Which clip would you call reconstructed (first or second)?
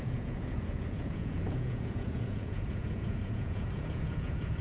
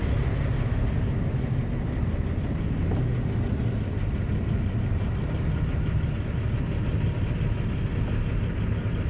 first